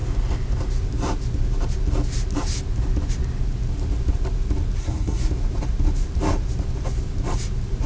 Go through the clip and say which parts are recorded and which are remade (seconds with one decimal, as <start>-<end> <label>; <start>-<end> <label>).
0.0-4.8 recorded; 4.8-5.3 remade; 5.3-7.9 recorded